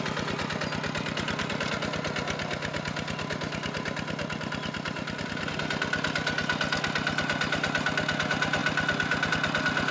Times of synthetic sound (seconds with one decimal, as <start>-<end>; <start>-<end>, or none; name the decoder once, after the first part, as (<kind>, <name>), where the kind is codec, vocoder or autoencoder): none

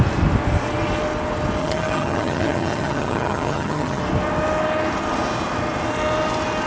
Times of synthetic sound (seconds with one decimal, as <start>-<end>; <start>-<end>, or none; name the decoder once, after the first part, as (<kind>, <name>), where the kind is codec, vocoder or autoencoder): 1.6-4.0 (vocoder, HiFi-GAN)

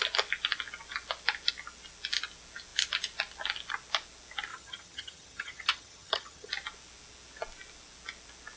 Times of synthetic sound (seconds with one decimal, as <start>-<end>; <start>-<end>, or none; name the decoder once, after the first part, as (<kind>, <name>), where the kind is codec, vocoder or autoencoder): 4.5-6.5 (vocoder, HiFi-GAN)